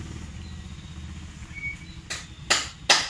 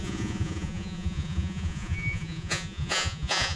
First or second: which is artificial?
second